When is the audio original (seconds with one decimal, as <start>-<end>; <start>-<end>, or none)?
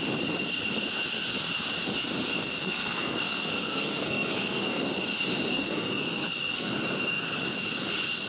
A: 0.0-2.4; 4.8-5.5; 6.7-8.3